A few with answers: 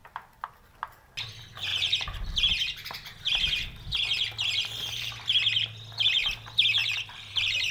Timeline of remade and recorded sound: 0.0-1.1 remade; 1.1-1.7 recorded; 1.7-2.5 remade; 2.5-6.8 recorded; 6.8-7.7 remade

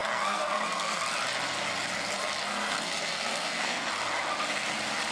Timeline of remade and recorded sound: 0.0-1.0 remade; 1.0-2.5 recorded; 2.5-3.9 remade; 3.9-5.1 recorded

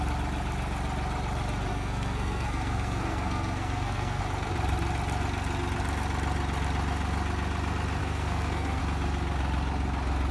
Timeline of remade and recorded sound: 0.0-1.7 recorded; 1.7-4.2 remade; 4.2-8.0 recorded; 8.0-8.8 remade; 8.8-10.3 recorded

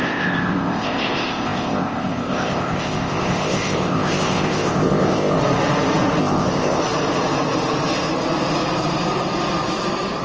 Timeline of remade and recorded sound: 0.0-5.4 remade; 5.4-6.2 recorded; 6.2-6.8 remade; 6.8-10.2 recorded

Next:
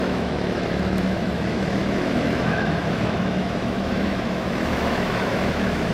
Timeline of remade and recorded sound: 0.0-5.9 remade

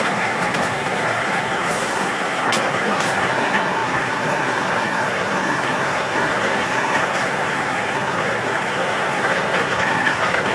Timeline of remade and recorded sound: 0.0-10.5 remade

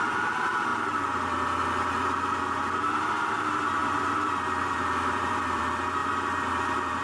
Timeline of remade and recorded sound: 0.0-0.7 remade; 0.7-3.1 recorded; 3.1-6.0 remade; 6.0-6.5 recorded; 6.5-7.0 remade

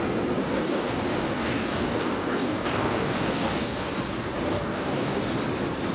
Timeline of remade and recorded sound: 0.0-0.4 recorded; 0.4-3.9 remade; 3.9-4.5 recorded; 4.5-5.2 remade; 5.2-5.9 recorded